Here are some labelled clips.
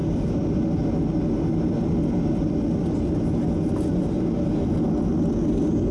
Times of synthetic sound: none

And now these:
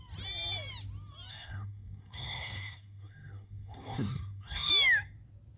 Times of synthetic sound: 1.3-4.7

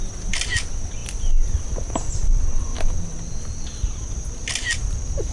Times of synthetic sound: none